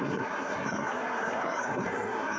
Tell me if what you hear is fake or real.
fake